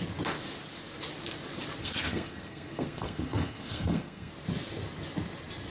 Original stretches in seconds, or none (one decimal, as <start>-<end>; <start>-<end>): 0.0-1.8; 4.3-5.7